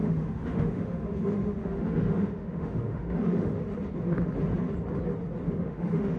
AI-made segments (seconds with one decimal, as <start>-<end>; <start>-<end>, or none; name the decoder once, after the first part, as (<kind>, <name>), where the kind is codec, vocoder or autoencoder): 0.0-3.6 (autoencoder, DAC-VAE); 5.5-6.2